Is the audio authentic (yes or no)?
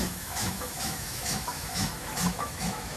no